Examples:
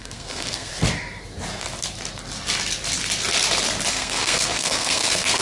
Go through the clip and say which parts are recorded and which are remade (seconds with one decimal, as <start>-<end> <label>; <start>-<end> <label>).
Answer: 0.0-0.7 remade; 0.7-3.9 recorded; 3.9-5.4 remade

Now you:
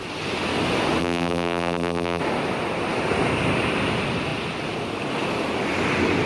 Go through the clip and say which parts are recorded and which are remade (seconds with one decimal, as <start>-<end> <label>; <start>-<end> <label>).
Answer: 0.0-1.0 recorded; 1.0-2.2 remade; 2.2-6.3 recorded

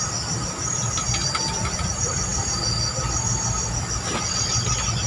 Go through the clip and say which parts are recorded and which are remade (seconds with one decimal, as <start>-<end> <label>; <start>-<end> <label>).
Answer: 0.0-5.1 recorded

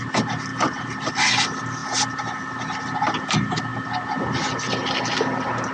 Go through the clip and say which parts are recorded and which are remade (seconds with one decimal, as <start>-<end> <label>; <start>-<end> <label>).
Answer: 0.0-5.7 recorded